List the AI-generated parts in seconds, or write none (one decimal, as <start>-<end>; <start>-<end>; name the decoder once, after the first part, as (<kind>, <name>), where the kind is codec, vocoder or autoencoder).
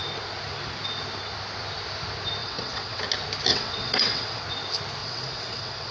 2.4-3.0 (vocoder, WaveNeXt); 3.5-4.4; 5.0-5.9